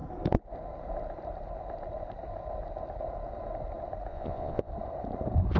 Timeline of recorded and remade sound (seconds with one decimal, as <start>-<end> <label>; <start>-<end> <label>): 0.0-4.1 recorded; 4.1-4.7 remade; 4.7-5.6 recorded